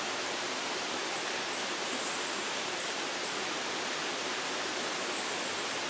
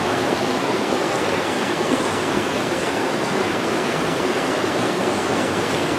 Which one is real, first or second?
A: first